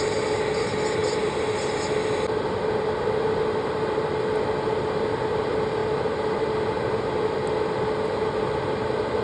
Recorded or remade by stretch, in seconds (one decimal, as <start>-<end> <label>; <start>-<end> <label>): 0.0-9.2 recorded

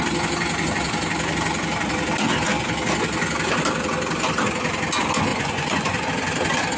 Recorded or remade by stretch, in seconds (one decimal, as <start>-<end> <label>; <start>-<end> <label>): 0.0-5.3 recorded; 5.3-6.1 remade; 6.1-6.8 recorded

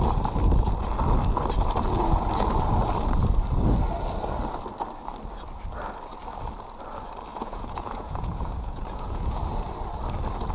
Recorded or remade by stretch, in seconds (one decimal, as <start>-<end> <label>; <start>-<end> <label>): 0.0-7.3 recorded; 7.3-9.4 remade; 9.4-10.5 recorded